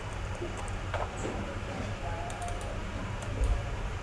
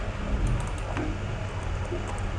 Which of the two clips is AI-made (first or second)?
first